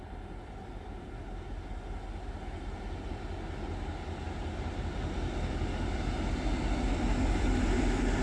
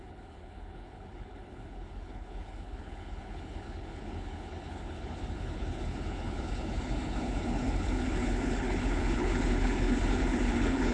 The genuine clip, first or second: first